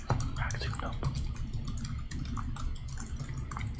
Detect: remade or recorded recorded